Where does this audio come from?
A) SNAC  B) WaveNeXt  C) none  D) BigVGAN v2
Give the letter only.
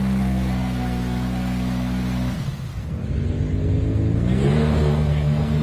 A